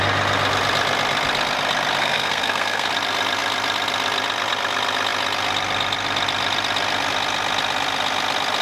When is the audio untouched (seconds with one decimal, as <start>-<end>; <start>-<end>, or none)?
0.0-2.0; 2.9-8.6